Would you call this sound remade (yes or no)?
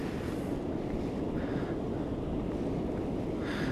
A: no